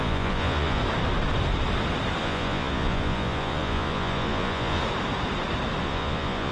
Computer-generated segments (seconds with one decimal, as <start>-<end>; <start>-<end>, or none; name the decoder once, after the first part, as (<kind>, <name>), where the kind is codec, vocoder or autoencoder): 0.0-0.8 (vocoder, Vocos); 2.2-4.8; 5.8-6.5